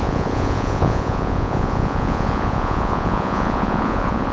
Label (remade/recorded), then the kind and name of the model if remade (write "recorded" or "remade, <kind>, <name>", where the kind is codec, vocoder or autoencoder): remade, vocoder, Vocos